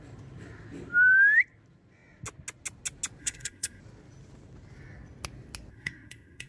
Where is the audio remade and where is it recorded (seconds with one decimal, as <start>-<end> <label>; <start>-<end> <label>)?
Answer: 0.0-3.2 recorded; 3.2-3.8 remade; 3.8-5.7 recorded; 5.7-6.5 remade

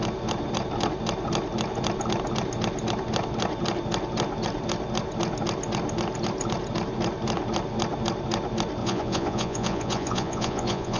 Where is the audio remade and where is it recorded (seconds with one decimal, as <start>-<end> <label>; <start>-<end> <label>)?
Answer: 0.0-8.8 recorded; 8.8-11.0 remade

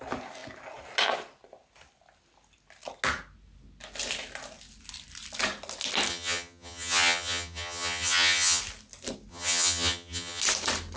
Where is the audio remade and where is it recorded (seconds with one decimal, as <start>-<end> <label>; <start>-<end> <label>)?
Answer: 0.0-6.1 recorded; 6.1-8.6 remade; 8.6-9.3 recorded; 9.3-10.4 remade; 10.4-11.0 recorded